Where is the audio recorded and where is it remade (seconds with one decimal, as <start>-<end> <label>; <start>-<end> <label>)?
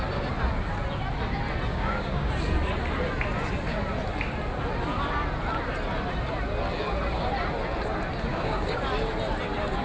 0.0-1.7 recorded; 1.7-2.3 remade; 2.3-8.3 recorded; 8.3-8.8 remade; 8.8-9.8 recorded